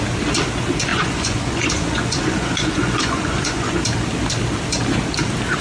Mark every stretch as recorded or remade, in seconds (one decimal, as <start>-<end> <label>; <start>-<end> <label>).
0.0-0.9 recorded; 0.9-3.8 remade; 3.8-5.6 recorded